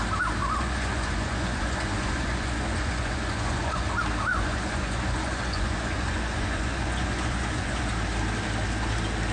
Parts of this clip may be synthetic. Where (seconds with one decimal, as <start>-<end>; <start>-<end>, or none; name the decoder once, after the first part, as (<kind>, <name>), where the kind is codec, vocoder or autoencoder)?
0.4-3.9 (vocoder, Vocos); 4.3-7.9